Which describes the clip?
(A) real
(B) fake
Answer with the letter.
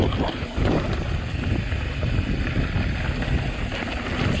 A